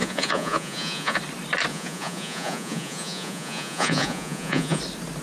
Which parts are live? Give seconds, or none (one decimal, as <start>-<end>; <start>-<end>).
1.2-1.7; 4.8-5.2